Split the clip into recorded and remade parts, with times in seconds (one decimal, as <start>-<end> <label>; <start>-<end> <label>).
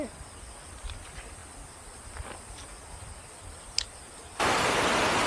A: 0.0-5.3 recorded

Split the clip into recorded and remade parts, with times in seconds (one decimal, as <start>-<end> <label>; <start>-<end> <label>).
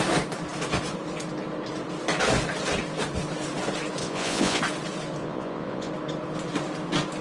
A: 0.0-4.0 recorded; 4.0-4.6 remade; 4.6-5.2 recorded; 5.2-5.9 remade; 5.9-7.2 recorded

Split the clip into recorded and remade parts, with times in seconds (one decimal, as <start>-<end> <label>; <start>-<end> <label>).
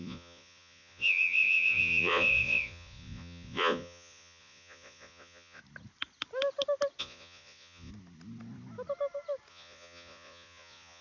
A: 0.0-5.6 remade; 5.6-7.0 recorded; 7.0-7.9 remade; 7.9-9.5 recorded; 9.5-11.0 remade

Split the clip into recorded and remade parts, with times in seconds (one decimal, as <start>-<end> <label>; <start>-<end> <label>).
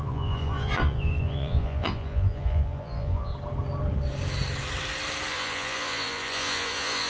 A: 0.0-3.3 remade; 3.3-5.3 recorded; 5.3-7.1 remade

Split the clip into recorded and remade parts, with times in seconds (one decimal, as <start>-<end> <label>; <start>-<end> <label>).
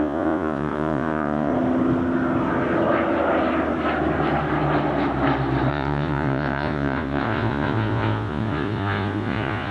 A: 0.0-1.5 remade; 1.5-5.7 recorded; 5.7-9.7 remade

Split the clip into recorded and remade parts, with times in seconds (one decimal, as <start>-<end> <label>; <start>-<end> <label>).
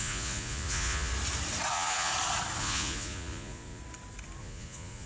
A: 0.0-1.1 remade; 1.1-1.7 recorded; 1.7-2.1 remade; 2.1-2.6 recorded; 2.6-3.8 remade; 3.8-4.4 recorded; 4.4-5.1 remade